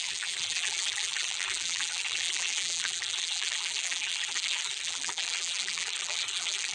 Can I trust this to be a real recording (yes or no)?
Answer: no